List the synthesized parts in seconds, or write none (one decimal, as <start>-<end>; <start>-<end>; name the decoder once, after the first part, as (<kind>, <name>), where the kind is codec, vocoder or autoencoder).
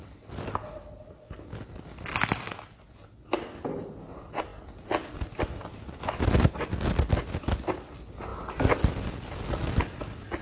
none